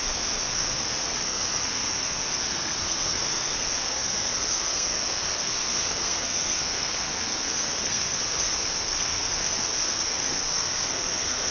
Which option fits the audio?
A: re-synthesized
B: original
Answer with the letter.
A